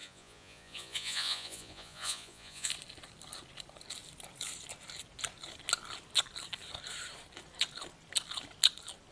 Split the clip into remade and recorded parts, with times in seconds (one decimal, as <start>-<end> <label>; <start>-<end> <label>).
0.0-2.7 remade; 2.7-9.1 recorded